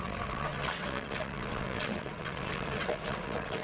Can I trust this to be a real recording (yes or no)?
no